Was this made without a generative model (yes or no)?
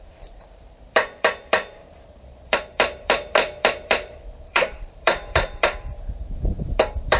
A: no